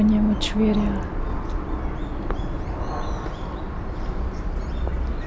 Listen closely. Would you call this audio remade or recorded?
recorded